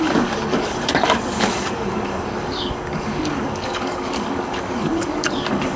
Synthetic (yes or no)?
yes